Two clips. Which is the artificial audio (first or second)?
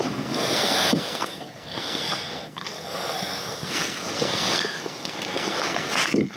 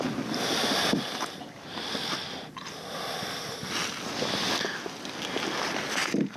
first